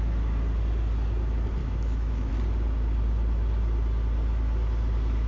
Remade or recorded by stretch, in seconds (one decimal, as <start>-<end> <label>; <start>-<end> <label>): 0.0-1.6 recorded; 1.6-2.3 remade; 2.3-5.3 recorded

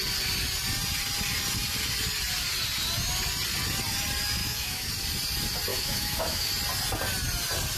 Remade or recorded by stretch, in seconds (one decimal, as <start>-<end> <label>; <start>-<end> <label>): 0.0-4.4 recorded; 4.4-4.9 remade; 4.9-5.7 recorded; 5.7-6.5 remade; 6.5-7.8 recorded

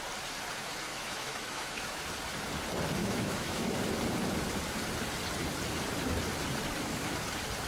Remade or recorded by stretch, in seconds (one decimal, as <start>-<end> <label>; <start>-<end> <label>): 0.0-0.9 recorded; 0.9-2.0 remade; 2.0-3.0 recorded; 3.0-3.8 remade; 3.8-7.7 recorded

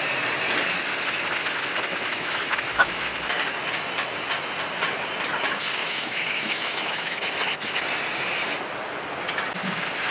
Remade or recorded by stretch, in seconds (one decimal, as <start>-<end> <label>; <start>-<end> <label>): 0.0-2.1 recorded; 2.1-2.9 remade; 2.9-5.8 recorded; 5.8-7.2 remade; 7.2-10.1 recorded

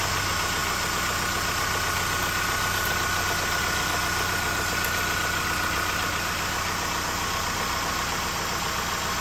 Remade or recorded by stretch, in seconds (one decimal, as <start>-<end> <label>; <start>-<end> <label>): 0.0-9.2 recorded

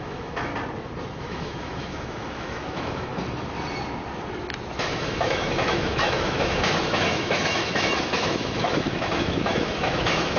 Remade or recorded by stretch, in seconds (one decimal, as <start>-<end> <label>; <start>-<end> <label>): 0.0-0.5 remade; 0.5-1.2 recorded; 1.2-3.1 remade; 3.1-4.8 recorded; 4.8-10.4 remade

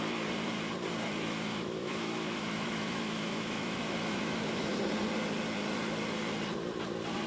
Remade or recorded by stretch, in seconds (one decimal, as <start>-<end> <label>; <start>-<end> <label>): 0.0-1.5 recorded; 1.5-4.8 remade; 4.8-7.3 recorded